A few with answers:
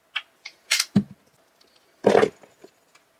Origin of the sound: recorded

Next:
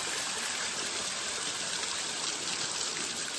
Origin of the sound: recorded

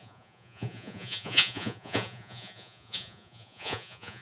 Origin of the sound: remade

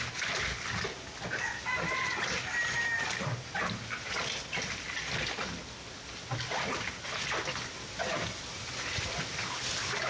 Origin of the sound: recorded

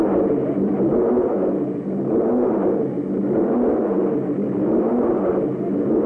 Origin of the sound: recorded